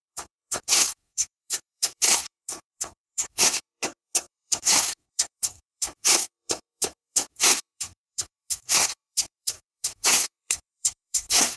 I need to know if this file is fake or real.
fake